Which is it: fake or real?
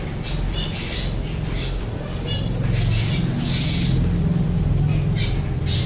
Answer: real